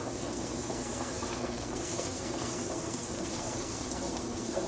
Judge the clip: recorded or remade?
remade